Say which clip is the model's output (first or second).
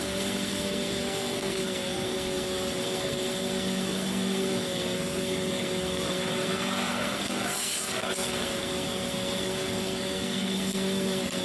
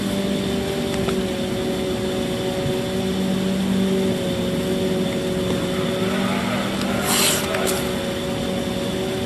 first